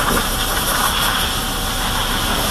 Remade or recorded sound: recorded